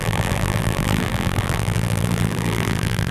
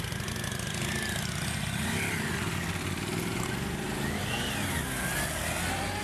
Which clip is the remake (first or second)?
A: first